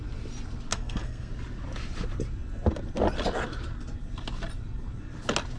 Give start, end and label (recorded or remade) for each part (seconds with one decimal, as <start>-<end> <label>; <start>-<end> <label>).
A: 0.0-0.7 recorded; 0.7-1.3 remade; 1.3-5.6 recorded